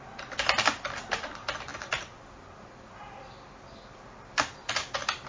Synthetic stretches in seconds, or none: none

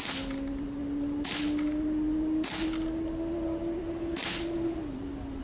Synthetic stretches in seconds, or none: none

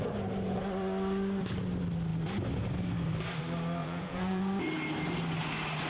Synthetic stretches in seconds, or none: 3.8-4.4 (vocoder, Vocos)

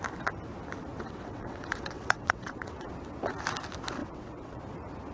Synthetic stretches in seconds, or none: 0.9-2.9 (vocoder, WaveNeXt); 4.0-4.6

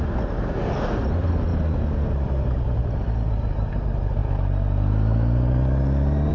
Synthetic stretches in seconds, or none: none

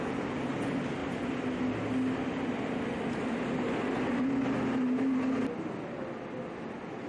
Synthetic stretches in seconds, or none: none